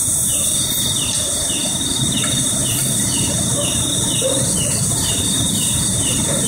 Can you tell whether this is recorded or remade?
remade